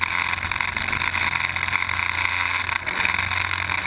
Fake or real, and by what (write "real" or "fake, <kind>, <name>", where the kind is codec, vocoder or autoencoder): real